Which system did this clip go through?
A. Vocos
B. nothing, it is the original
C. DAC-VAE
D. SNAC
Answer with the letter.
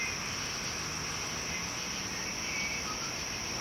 B